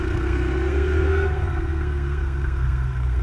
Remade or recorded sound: remade